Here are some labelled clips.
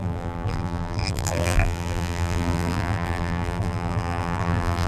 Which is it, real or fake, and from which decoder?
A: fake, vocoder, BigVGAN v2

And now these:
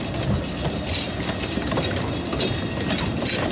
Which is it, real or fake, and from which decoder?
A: real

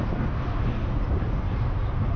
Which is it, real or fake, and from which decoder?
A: real